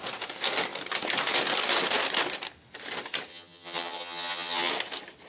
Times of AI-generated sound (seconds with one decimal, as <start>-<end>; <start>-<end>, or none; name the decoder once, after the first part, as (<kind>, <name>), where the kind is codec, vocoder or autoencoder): 3.3-4.7 (vocoder, HiFi-GAN)

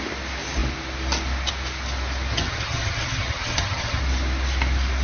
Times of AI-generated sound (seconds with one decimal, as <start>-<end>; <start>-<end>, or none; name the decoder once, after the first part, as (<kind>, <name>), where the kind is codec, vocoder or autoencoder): 2.3-4.0 (vocoder, HiFi-GAN)

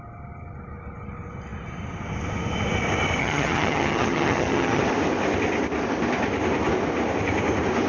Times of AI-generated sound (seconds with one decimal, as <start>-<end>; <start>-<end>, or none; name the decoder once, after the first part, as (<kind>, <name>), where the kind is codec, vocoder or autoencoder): 3.2-4.8 (vocoder, HiFi-GAN)

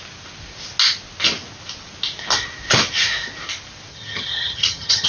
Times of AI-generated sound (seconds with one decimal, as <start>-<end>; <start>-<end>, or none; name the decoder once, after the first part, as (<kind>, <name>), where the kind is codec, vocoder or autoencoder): 3.9-5.1 (vocoder, HiFi-GAN)